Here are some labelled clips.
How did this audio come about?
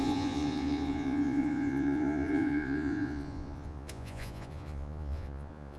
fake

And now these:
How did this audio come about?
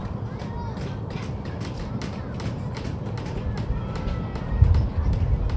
real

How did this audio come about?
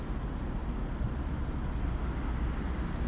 real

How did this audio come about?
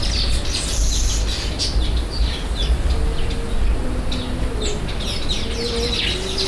real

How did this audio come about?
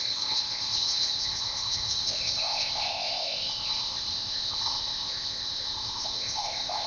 fake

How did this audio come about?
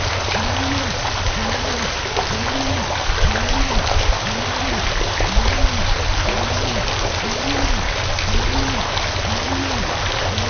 real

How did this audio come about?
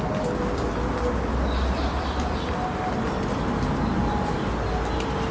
real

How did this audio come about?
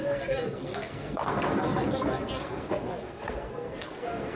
fake